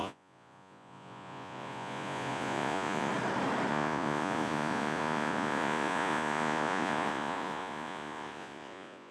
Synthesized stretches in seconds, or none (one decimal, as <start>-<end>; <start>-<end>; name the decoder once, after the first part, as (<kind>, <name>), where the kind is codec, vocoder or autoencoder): 0.0-3.1 (vocoder, Vocos); 3.7-9.1